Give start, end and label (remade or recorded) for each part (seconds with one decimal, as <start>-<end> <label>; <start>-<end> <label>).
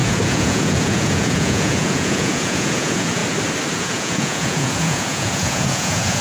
0.0-3.2 remade; 3.2-3.7 recorded; 3.7-6.2 remade